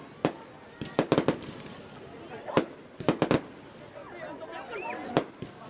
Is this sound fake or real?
real